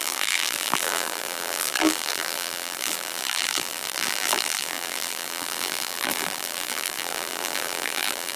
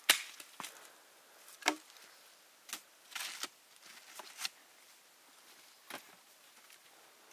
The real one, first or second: second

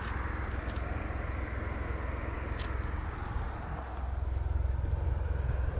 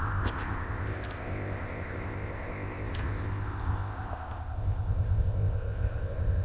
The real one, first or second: first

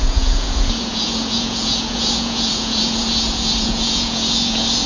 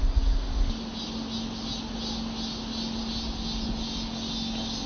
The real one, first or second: second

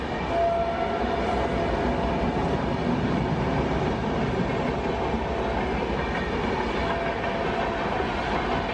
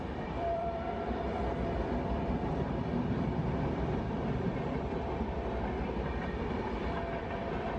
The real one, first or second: first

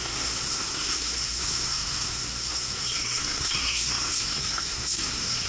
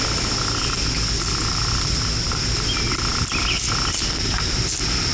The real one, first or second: second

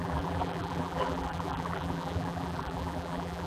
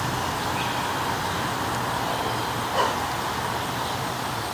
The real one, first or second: second